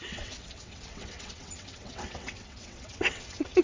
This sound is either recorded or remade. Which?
remade